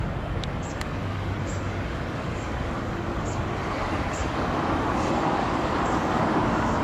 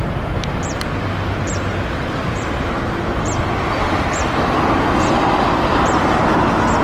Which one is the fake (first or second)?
first